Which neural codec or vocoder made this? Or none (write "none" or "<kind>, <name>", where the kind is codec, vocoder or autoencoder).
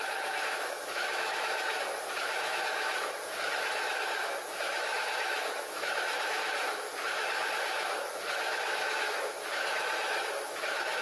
autoencoder, DAC-VAE